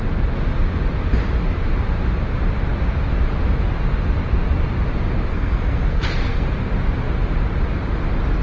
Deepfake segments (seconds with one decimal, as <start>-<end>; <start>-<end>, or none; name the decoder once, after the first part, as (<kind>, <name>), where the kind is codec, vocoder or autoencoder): 5.3-6.5 (codec, SNAC)